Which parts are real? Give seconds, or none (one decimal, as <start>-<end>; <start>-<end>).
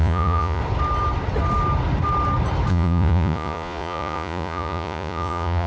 0.6-2.7